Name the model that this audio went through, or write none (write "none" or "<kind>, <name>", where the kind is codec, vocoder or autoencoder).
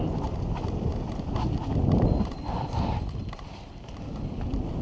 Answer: none